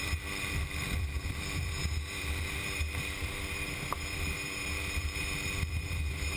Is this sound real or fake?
fake